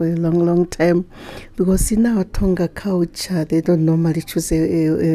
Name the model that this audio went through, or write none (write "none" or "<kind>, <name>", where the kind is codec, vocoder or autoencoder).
none